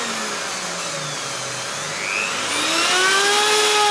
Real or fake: real